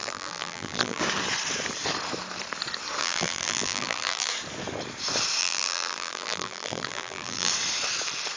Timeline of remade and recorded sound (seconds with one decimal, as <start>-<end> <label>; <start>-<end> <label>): 0.0-1.0 remade; 1.0-3.0 recorded; 3.0-4.3 remade; 4.3-5.4 recorded; 5.4-7.5 remade; 7.5-8.4 recorded